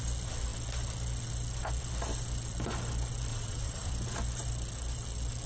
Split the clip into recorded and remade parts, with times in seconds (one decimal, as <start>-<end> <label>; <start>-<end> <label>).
0.0-3.3 recorded; 3.3-3.9 remade; 3.9-5.5 recorded